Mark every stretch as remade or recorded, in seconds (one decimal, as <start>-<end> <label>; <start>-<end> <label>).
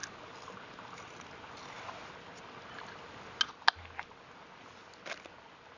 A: 0.0-5.8 recorded